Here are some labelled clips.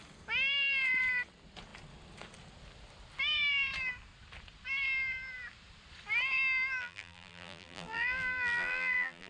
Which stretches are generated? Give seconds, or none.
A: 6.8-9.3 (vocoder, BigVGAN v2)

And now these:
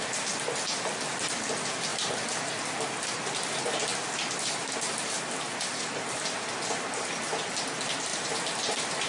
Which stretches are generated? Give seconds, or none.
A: 8.1-9.1 (vocoder, BigVGAN v2)